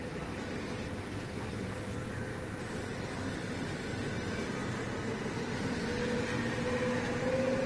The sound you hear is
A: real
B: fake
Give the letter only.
A